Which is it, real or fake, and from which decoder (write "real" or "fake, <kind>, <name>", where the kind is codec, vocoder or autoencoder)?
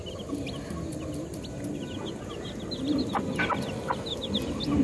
real